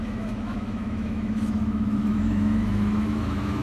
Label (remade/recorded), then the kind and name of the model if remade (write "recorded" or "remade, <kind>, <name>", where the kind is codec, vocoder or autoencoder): remade, autoencoder, DAC-VAE